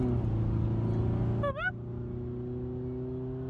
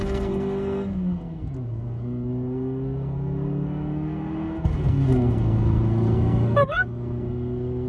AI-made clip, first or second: second